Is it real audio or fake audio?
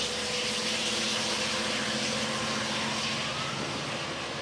real